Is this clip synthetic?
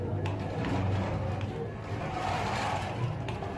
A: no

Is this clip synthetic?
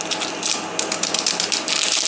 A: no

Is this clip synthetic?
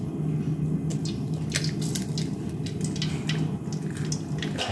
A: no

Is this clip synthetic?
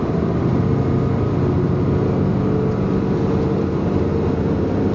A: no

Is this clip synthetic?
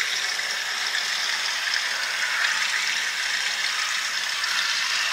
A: no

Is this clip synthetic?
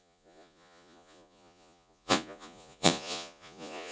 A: yes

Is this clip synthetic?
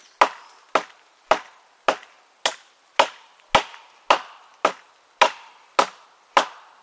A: no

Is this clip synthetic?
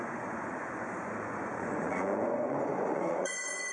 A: yes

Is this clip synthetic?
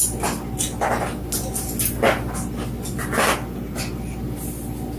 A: no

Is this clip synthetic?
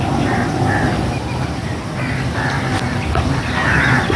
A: no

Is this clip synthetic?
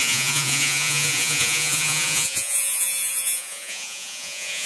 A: yes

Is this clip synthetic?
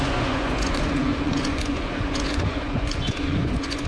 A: yes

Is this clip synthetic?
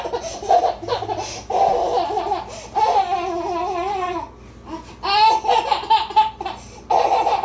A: no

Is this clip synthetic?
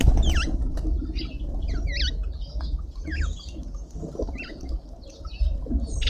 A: no